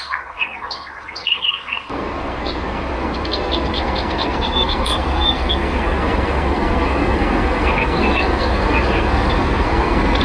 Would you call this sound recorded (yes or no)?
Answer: no